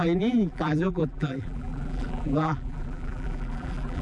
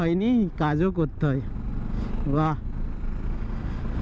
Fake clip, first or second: first